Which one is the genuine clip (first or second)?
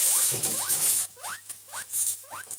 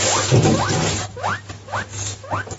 second